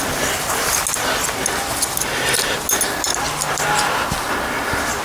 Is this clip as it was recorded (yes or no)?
yes